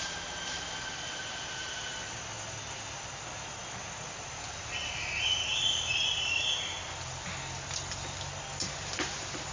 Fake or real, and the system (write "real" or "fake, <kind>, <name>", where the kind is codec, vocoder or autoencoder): real